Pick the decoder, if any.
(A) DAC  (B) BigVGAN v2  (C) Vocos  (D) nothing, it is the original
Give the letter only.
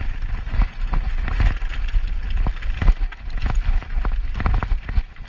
D